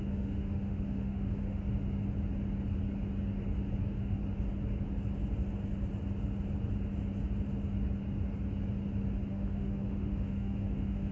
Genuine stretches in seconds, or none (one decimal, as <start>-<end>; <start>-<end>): 1.6-3.8; 4.2-9.3